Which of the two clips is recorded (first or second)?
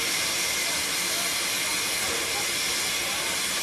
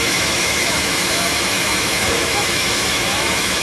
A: first